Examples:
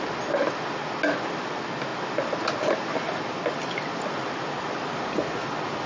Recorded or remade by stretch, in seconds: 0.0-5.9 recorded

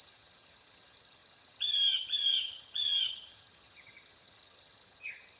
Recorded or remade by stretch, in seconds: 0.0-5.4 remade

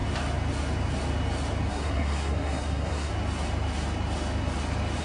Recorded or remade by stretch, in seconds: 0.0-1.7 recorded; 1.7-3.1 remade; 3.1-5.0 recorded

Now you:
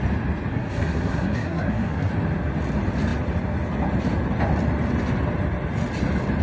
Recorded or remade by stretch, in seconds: 0.0-0.5 recorded; 0.5-2.1 remade; 2.1-6.4 recorded

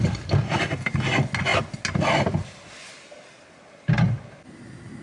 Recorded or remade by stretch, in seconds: 0.0-5.0 recorded